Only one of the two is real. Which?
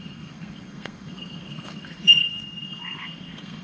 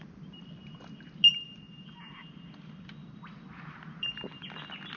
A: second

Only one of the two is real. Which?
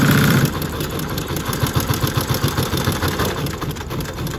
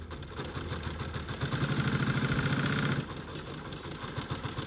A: second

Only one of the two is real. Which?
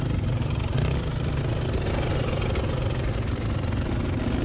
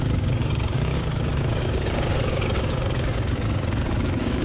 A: first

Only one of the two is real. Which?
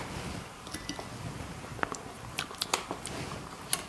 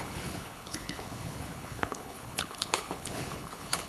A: first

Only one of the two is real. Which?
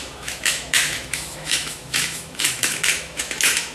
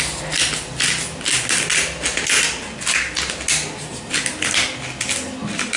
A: second